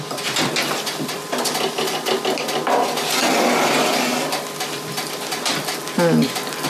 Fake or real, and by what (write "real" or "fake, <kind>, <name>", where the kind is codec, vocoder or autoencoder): real